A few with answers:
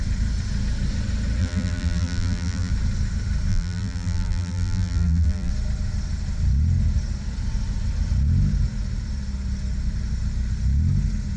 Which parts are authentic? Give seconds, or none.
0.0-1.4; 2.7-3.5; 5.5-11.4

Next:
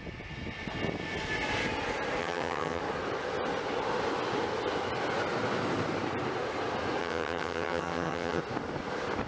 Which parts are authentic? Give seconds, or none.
0.0-2.2; 2.8-7.0; 8.4-9.3

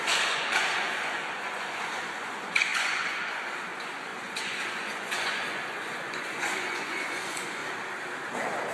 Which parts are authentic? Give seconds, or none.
7.6-8.7

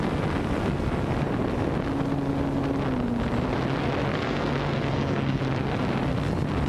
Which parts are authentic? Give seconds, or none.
0.0-4.1; 5.4-6.7